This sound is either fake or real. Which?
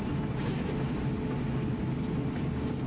real